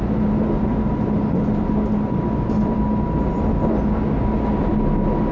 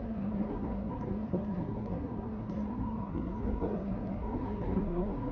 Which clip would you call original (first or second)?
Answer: first